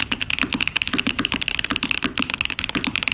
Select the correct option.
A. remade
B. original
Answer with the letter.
B